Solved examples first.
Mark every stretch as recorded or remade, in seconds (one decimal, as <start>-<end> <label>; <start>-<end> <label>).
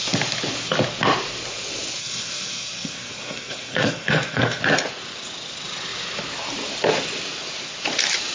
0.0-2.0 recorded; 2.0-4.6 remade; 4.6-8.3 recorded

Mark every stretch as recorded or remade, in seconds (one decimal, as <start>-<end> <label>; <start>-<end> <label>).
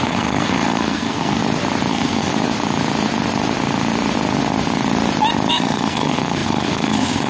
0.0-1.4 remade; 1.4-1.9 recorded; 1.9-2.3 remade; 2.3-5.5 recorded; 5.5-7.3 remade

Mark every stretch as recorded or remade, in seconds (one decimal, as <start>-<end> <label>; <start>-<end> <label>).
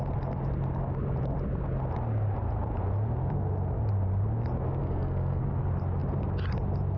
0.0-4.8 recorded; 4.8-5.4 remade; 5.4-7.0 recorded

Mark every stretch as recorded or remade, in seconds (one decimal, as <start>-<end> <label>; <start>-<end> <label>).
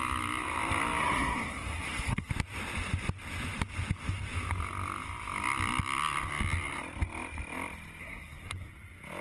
0.0-1.0 recorded; 1.0-2.3 remade; 2.3-8.0 recorded; 8.0-8.7 remade; 8.7-9.2 recorded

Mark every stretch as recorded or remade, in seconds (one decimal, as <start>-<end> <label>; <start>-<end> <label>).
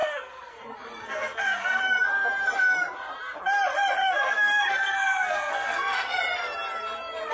0.0-0.6 remade; 0.6-1.0 recorded; 1.0-1.8 remade; 1.8-4.0 recorded; 4.0-6.2 remade; 6.2-7.3 recorded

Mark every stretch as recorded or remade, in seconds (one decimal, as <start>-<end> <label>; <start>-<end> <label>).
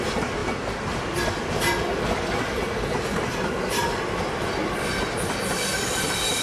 0.0-6.4 recorded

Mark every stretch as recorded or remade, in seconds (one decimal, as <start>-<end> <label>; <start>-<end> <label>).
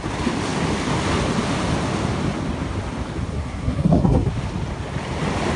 0.0-3.3 recorded; 3.3-4.3 remade; 4.3-5.6 recorded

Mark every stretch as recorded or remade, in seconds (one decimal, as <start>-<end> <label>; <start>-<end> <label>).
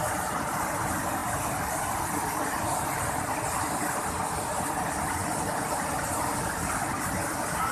0.0-7.7 recorded